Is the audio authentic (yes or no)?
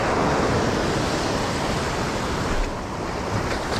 yes